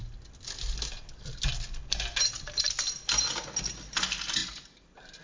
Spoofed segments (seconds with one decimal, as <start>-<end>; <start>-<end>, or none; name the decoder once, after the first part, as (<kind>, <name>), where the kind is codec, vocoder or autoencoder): none